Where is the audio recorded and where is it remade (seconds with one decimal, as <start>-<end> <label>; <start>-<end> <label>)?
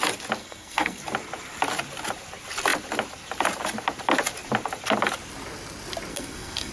0.0-0.4 recorded; 0.4-1.0 remade; 1.0-6.1 recorded; 6.1-6.7 remade